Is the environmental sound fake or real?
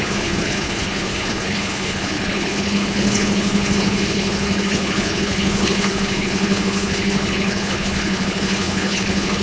fake